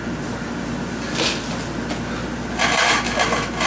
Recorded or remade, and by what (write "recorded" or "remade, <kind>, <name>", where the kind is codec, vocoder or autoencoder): recorded